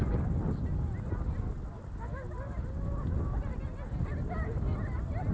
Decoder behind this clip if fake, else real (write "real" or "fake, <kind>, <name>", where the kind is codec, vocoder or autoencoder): real